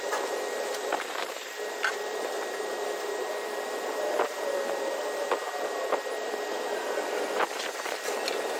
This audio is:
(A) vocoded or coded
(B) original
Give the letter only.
A